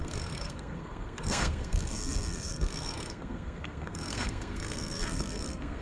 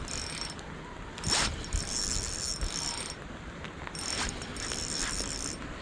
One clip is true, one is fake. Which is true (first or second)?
second